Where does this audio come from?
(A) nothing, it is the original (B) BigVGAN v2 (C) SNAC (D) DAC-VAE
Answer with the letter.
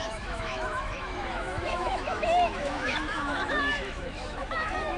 D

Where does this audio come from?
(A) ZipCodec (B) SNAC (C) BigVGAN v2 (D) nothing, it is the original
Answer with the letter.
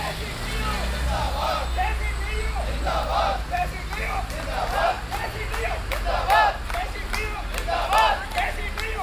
D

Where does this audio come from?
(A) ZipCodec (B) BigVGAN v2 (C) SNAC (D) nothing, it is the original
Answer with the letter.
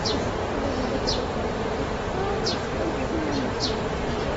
B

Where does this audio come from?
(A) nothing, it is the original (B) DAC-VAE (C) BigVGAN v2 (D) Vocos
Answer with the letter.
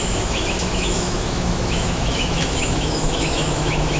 B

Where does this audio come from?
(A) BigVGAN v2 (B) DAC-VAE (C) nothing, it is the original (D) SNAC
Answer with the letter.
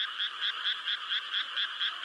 C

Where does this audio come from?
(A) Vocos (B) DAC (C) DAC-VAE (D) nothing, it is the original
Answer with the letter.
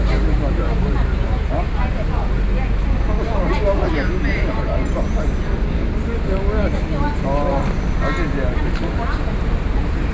D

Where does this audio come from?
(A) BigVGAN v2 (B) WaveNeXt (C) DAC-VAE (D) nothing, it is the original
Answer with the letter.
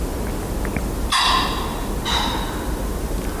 D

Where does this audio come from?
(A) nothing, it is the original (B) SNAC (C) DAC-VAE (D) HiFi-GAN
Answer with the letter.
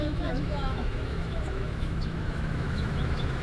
C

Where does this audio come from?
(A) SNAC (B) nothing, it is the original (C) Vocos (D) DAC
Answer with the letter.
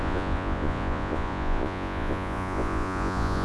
C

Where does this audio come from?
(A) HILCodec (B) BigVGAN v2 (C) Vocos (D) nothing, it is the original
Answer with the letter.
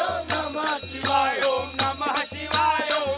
D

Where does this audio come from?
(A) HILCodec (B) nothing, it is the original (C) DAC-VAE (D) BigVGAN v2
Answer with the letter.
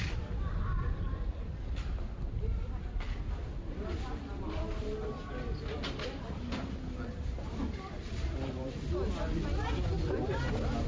B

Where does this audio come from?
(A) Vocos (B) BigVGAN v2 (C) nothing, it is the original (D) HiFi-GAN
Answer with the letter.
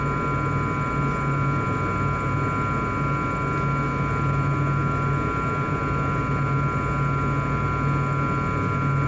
C